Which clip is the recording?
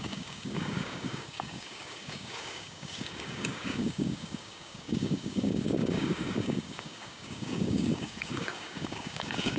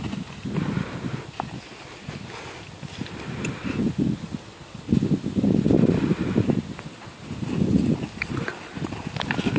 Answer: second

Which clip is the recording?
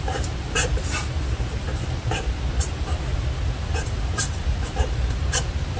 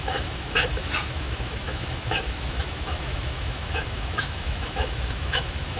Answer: first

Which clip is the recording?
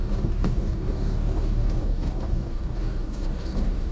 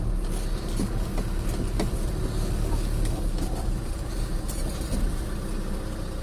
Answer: second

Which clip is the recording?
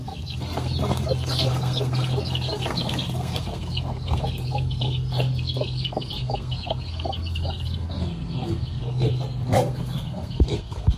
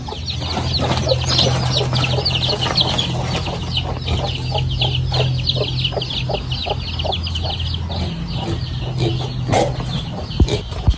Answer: second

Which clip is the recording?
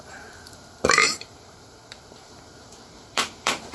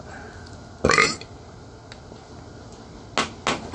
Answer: second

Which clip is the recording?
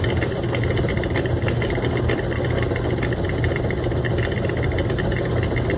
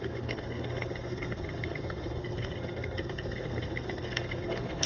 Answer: first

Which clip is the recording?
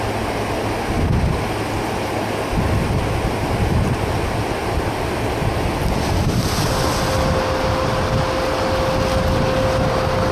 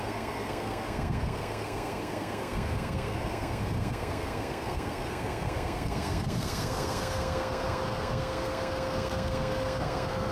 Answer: first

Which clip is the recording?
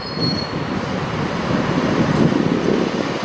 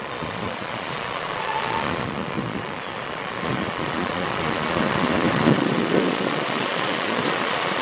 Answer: first